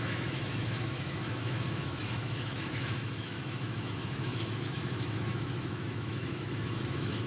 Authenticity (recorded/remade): remade